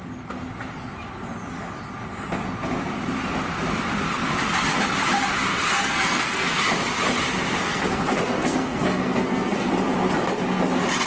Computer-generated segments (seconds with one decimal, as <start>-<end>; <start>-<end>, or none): 5.7-6.6; 7.6-9.7